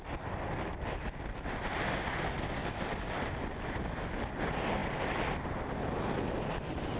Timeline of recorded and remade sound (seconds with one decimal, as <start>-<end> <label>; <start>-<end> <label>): 0.0-7.0 recorded